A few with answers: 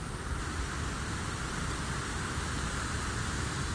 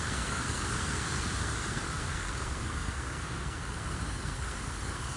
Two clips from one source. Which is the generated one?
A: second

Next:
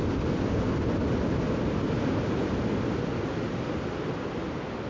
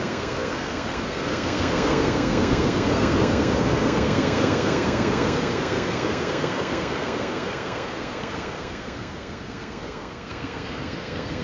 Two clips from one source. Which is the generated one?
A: second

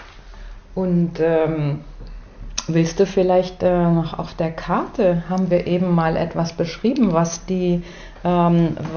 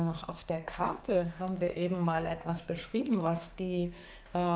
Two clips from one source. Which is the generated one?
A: second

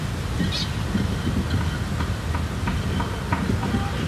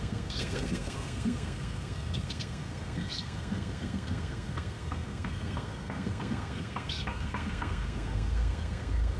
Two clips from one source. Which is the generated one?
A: second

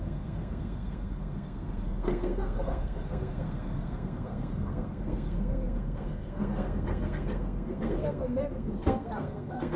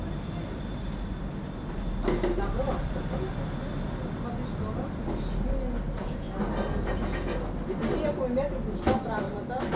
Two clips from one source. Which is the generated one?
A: first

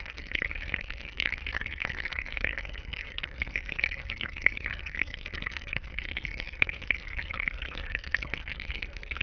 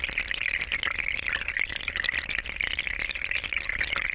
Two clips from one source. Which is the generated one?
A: first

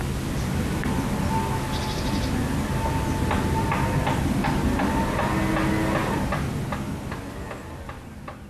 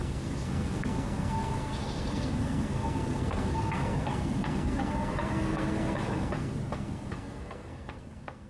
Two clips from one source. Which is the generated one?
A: second